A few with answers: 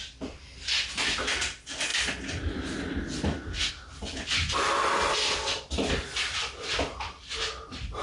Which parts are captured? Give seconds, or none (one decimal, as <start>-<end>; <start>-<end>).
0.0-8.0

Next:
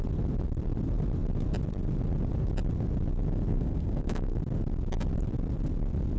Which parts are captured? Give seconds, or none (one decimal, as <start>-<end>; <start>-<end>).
0.0-3.5; 4.4-6.2

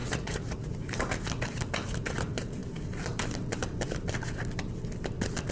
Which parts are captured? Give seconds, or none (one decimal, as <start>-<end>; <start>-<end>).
0.7-5.5